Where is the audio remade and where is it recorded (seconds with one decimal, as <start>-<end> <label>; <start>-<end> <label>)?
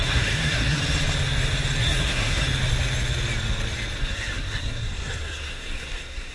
0.0-0.8 remade; 0.8-1.8 recorded; 1.8-2.4 remade; 2.4-4.0 recorded; 4.0-6.3 remade